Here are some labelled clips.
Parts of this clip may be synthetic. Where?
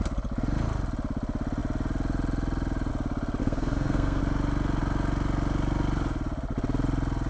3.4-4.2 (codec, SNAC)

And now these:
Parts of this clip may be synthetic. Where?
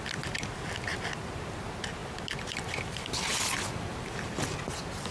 none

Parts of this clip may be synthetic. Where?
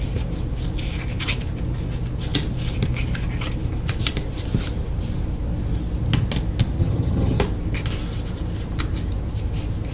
6.8-7.4 (vocoder, HiFi-GAN)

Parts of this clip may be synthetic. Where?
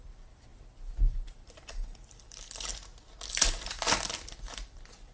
0.0-2.7 (vocoder, BigVGAN v2); 3.3-5.1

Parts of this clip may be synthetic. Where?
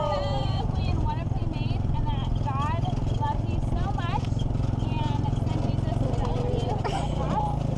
0.0-1.4 (vocoder, BigVGAN v2); 6.1-7.8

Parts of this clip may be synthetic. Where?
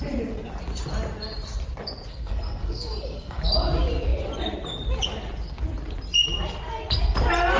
2.1-3.4 (codec, SNAC)